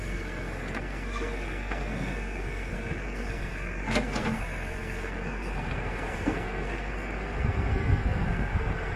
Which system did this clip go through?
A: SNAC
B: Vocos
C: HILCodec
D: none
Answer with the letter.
A